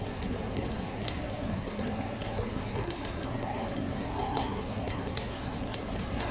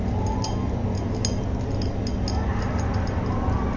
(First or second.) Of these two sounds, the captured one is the second